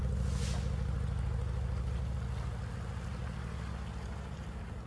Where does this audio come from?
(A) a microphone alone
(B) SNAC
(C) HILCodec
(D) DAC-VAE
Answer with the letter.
A